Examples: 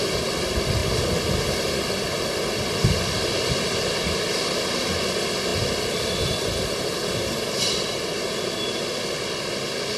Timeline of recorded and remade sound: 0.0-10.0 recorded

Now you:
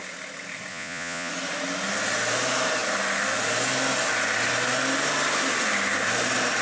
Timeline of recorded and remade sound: 0.0-0.7 recorded; 0.7-1.3 remade; 1.3-6.6 recorded

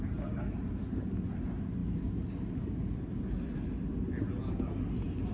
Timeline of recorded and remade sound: 0.0-5.3 recorded

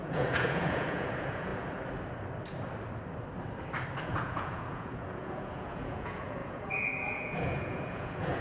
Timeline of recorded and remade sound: 0.0-1.5 remade; 1.5-4.0 recorded; 4.0-8.4 remade